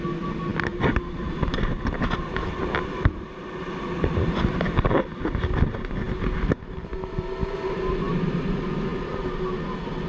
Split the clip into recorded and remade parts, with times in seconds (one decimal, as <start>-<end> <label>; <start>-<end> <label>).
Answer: 0.0-10.1 recorded